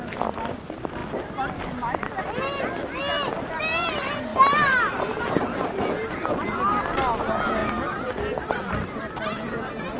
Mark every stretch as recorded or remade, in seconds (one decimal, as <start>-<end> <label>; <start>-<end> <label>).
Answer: 0.0-10.0 recorded